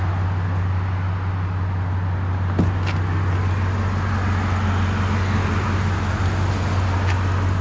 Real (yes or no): yes